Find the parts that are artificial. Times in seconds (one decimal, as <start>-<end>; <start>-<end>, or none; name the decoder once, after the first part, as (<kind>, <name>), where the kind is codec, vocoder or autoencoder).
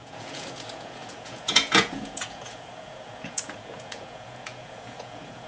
0.0-5.5 (vocoder, Vocos)